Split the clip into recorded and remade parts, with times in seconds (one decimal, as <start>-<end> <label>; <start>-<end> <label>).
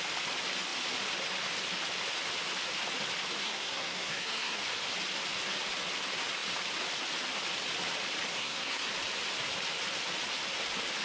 0.0-3.4 recorded; 3.4-4.6 remade; 4.6-8.3 recorded; 8.3-8.9 remade; 8.9-11.0 recorded